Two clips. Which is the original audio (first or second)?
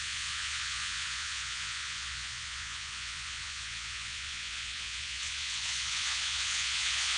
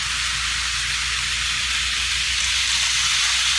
second